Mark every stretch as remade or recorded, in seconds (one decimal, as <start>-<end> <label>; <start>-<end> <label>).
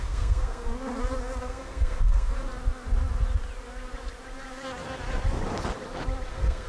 0.0-0.7 remade; 0.7-1.4 recorded; 1.4-2.3 remade; 2.3-6.3 recorded; 6.3-6.7 remade